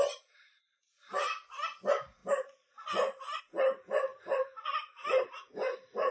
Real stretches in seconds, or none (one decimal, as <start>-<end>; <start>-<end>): none

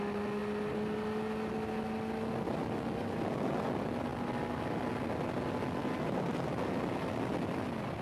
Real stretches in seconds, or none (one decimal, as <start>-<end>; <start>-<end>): 0.0-0.4; 1.2-3.0; 3.5-8.0